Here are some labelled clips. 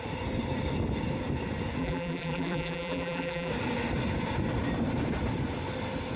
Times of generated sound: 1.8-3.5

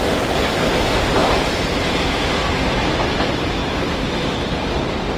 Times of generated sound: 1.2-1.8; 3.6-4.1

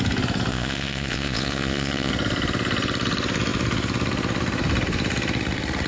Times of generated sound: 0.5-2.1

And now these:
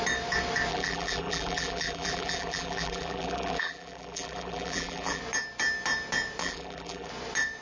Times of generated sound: 0.7-5.2; 6.4-7.1

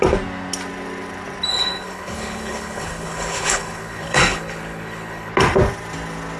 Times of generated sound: 1.5-5.3